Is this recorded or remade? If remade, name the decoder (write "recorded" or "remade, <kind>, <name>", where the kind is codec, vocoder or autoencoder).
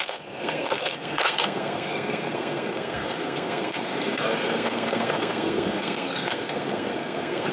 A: remade, codec, SNAC